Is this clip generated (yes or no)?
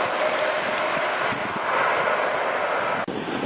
no